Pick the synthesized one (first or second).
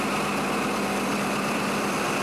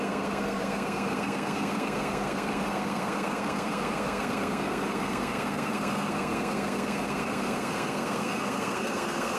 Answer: second